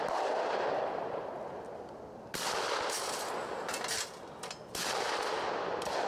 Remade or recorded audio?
recorded